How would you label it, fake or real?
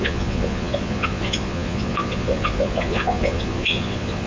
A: fake